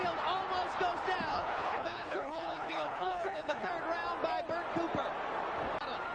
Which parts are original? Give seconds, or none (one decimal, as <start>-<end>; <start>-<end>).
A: 0.0-1.3; 3.7-6.1